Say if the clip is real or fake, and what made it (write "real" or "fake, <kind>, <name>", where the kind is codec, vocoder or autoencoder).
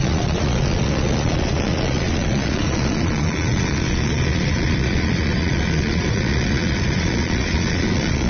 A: fake, vocoder, Vocos